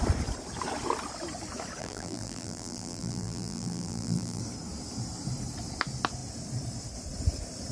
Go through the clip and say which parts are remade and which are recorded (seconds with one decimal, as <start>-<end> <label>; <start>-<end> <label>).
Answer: 0.0-1.8 recorded; 1.8-4.4 remade; 4.4-7.7 recorded